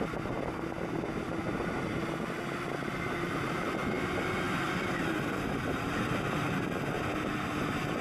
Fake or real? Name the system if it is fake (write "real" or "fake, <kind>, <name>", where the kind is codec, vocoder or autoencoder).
real